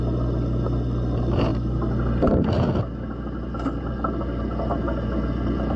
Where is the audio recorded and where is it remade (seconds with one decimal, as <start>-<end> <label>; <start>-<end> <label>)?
0.0-5.8 recorded